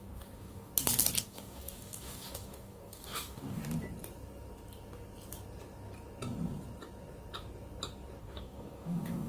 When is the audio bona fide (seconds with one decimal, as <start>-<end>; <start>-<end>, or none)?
0.7-1.2; 3.6-8.2